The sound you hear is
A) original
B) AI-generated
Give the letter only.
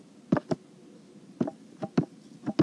A